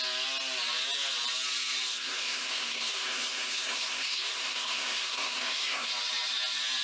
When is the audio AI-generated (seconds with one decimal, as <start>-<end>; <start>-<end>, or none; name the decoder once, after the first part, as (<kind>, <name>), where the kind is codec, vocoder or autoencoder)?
1.9-5.9 (codec, SNAC)